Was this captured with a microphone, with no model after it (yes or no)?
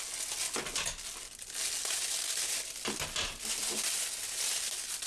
yes